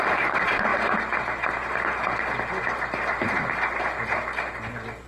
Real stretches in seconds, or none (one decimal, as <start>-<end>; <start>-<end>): 0.0-5.1

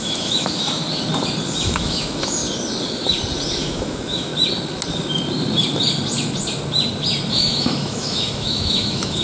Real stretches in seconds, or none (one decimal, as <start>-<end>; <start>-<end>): 0.8-1.6; 2.4-3.6; 4.3-7.3